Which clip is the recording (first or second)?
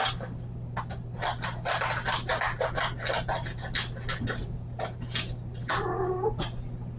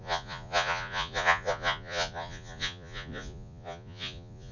first